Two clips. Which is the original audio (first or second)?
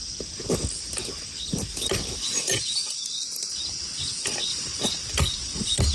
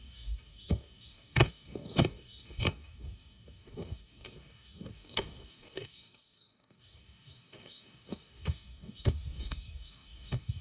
first